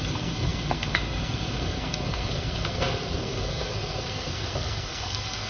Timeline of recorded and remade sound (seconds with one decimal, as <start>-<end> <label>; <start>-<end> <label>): 0.0-5.5 remade